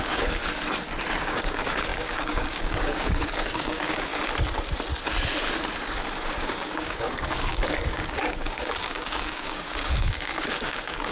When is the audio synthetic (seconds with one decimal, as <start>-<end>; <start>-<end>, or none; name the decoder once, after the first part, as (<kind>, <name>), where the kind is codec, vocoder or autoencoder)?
0.0-0.4 (codec, DAC); 1.2-4.1; 6.4-11.1